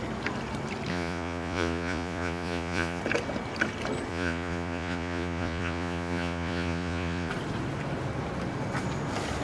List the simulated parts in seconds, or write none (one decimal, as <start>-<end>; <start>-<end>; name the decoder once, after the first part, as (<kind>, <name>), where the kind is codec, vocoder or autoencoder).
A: 0.9-3.0 (vocoder, Vocos); 4.1-7.3